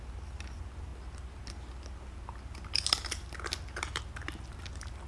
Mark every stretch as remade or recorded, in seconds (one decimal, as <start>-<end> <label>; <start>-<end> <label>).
0.0-5.1 recorded